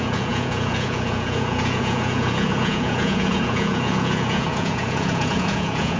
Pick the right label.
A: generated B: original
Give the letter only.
A